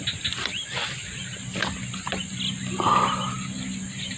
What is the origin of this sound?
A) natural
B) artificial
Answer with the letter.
A